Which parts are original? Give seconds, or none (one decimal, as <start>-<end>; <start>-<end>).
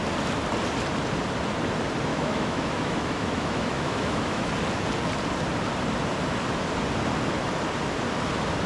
0.0-2.1; 4.5-8.7